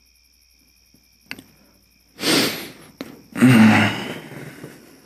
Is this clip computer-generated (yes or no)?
no